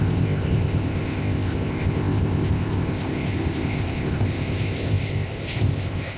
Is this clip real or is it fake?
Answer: fake